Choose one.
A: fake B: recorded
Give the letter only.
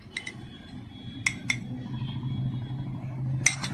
B